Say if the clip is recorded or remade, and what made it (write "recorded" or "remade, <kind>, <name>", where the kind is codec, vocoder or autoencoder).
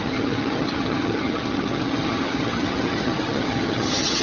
remade, vocoder, HiFi-GAN